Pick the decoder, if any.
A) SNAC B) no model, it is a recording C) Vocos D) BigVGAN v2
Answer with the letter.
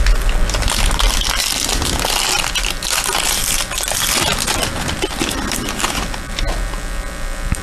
B